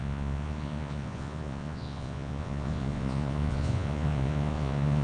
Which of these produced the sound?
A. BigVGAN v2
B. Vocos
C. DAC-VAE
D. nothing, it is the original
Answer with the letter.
B